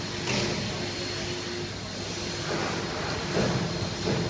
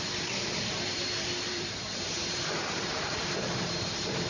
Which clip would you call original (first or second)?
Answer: first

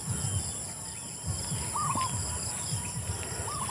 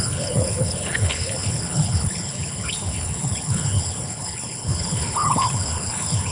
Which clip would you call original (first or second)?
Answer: first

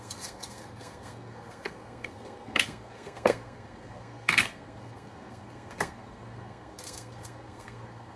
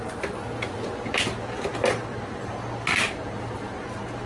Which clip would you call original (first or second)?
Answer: second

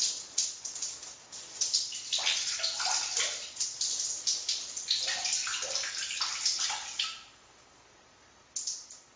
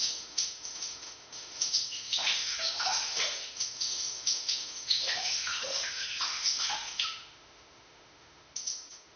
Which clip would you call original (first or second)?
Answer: first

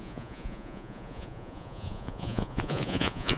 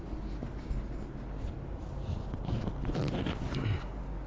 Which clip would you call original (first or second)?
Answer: second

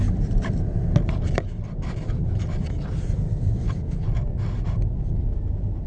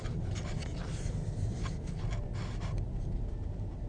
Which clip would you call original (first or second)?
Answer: second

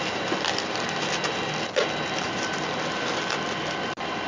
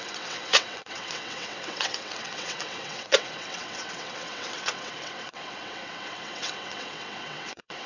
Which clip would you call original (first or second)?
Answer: first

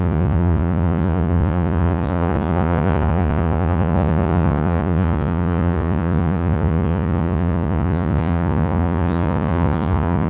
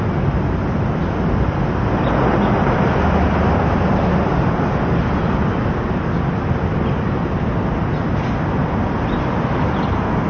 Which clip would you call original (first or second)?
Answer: second